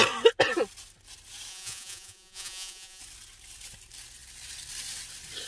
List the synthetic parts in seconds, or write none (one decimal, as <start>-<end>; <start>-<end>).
1.5-3.0